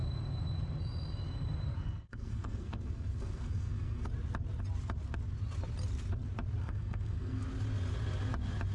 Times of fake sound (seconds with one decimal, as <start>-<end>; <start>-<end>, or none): 1.7-4.1; 6.6-7.4